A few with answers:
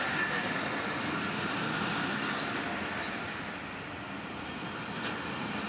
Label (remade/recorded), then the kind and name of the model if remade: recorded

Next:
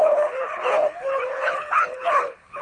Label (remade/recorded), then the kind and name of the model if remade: remade, codec, HILCodec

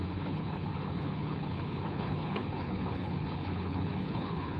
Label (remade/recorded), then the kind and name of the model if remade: remade, codec, HILCodec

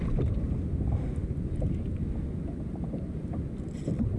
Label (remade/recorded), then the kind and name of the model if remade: recorded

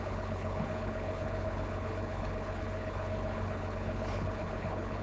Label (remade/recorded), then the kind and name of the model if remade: remade, codec, HILCodec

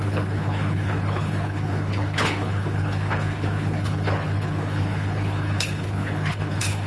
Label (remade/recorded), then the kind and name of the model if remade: remade, codec, HILCodec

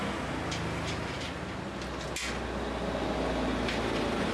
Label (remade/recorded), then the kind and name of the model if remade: recorded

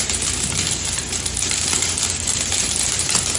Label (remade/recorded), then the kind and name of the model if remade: recorded